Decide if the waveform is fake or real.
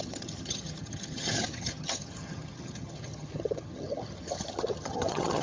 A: fake